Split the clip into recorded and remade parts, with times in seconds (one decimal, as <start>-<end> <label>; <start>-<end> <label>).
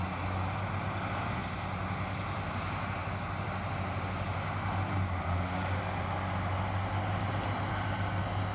0.0-8.5 recorded